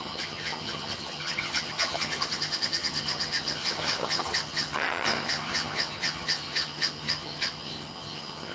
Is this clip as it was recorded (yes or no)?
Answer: no